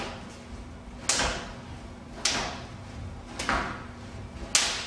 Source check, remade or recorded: recorded